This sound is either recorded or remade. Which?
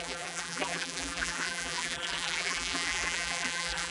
remade